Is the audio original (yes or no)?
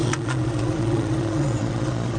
no